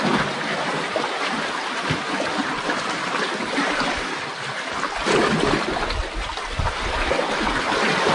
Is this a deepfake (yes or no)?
yes